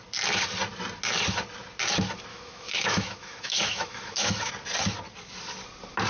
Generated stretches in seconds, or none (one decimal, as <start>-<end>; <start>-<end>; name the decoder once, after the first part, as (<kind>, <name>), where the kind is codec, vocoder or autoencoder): 2.3-4.5 (autoencoder, DAC-VAE)